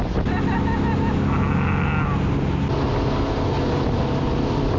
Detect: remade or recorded recorded